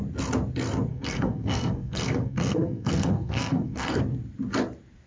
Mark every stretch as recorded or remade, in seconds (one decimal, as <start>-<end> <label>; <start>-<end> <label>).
0.0-0.9 recorded; 0.9-4.0 remade; 4.0-5.1 recorded